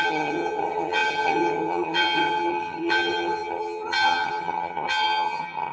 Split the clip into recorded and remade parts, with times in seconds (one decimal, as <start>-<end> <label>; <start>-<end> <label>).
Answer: 0.0-5.7 remade